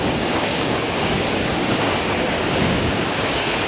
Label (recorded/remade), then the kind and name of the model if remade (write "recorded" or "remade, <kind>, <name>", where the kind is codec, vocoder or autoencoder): remade, codec, DAC